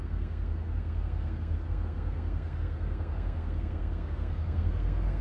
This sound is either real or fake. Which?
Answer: fake